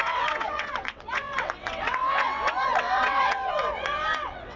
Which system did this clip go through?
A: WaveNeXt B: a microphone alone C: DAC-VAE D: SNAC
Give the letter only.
A